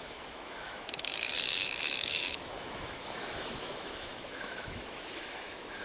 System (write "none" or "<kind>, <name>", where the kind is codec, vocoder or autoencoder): autoencoder, DAC-VAE